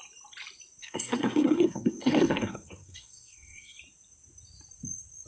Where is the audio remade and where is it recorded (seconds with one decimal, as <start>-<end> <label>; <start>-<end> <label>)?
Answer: 0.0-0.8 recorded; 0.8-3.8 remade; 3.8-5.3 recorded